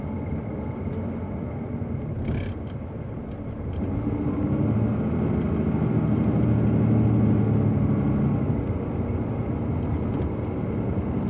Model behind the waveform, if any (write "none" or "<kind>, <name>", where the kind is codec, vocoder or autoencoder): none